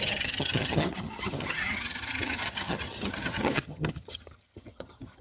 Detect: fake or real fake